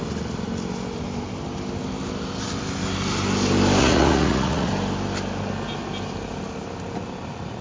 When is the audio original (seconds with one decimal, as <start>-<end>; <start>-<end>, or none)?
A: 0.0-3.8; 4.7-7.6